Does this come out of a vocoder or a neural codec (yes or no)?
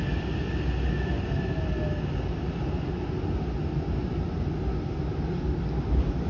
no